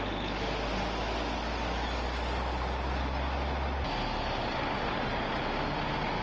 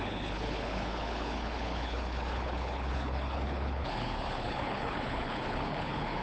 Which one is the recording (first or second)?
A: first